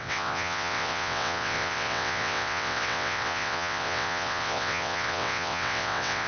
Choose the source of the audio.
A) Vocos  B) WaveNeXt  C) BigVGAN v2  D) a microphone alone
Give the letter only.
B